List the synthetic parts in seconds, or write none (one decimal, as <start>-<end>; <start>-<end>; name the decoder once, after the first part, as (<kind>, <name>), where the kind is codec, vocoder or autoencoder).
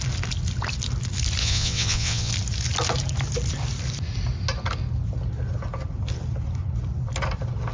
1.4-2.3 (vocoder, WaveNeXt)